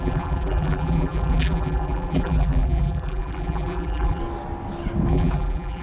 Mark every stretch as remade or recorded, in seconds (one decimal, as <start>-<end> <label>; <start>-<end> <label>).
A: 0.0-4.2 remade; 4.2-5.1 recorded; 5.1-5.8 remade